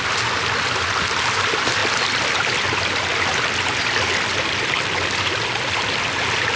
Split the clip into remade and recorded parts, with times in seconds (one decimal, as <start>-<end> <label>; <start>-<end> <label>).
0.0-6.6 recorded